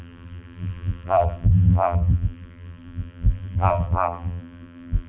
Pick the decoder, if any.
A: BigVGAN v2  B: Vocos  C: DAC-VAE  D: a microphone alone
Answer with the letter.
A